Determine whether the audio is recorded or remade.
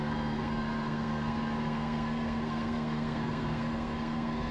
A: remade